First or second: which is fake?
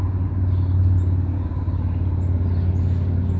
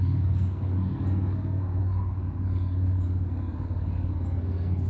second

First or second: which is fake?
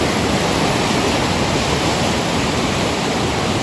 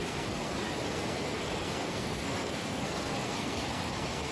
second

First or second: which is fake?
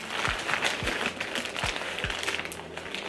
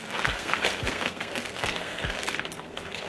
second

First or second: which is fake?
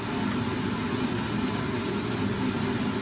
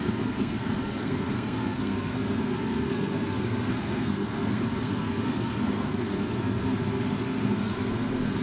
second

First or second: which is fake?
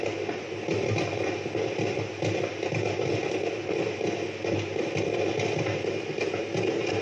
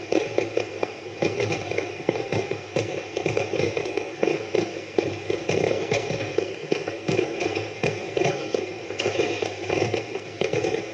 second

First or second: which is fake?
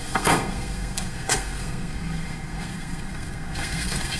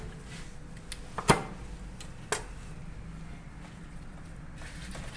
first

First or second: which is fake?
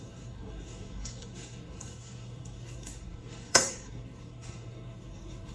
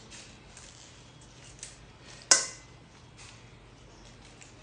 first